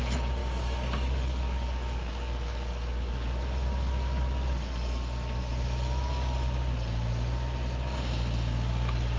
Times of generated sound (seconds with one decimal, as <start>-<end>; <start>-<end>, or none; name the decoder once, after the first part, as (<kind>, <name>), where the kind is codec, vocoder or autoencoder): 0.4-5.5 (codec, DAC)